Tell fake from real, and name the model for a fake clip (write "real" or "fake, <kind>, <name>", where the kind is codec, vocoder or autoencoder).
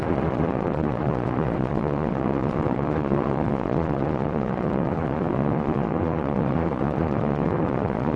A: fake, vocoder, Vocos